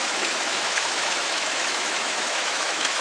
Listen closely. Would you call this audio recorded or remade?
remade